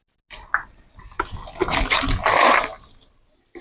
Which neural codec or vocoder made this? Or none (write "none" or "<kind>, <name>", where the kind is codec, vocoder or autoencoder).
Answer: none